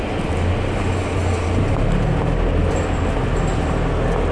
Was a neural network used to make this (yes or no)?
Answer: no